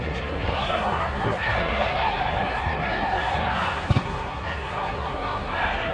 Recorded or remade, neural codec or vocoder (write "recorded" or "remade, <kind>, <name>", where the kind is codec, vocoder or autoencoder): remade, codec, SNAC